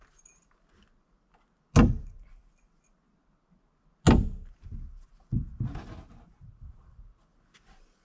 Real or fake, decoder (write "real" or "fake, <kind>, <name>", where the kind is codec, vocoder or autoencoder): real